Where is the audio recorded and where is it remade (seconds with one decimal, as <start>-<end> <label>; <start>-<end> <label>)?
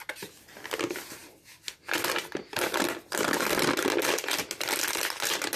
0.0-5.6 recorded